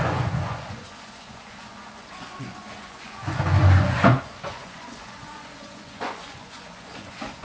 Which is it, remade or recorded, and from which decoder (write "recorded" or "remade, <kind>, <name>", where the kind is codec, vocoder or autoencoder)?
remade, vocoder, Vocos